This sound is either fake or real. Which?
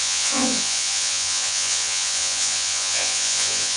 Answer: fake